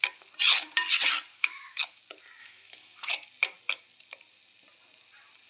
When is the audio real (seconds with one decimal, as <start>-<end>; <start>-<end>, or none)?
0.0-1.3; 2.0-2.4; 3.1-5.5